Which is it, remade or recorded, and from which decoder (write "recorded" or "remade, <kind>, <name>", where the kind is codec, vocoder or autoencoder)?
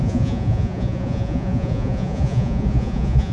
remade, vocoder, Vocos